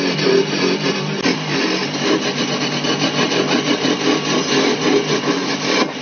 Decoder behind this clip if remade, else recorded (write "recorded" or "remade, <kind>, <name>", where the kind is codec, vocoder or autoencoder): recorded